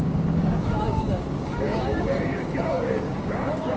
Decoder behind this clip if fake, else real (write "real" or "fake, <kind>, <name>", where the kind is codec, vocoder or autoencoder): fake, codec, DAC